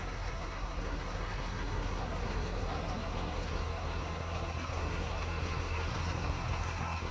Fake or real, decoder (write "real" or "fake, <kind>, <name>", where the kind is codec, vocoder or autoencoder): fake, codec, SNAC